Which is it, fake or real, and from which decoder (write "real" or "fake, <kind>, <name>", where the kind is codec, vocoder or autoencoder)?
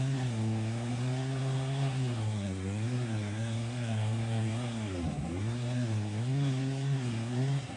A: fake, codec, SNAC